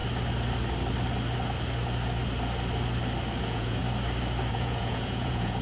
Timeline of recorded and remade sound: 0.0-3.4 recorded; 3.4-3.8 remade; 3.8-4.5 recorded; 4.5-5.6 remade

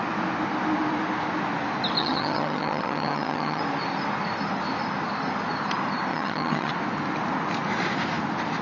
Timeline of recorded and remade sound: 0.0-2.0 recorded; 2.0-3.6 remade; 3.6-6.1 recorded; 6.1-6.7 remade; 6.7-8.6 recorded

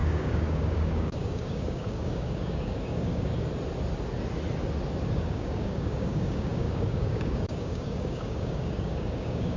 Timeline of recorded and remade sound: 0.0-3.3 remade; 3.3-5.1 recorded; 5.1-9.6 remade

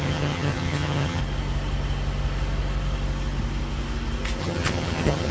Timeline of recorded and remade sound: 0.0-1.2 remade; 1.2-4.4 recorded; 4.4-5.3 remade

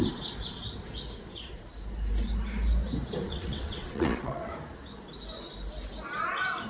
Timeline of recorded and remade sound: 0.0-3.3 recorded; 3.3-4.5 remade; 4.5-6.7 recorded

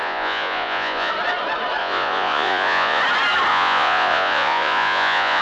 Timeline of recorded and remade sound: 0.0-1.1 remade; 1.1-1.8 recorded; 1.8-3.0 remade; 3.0-3.5 recorded; 3.5-5.4 remade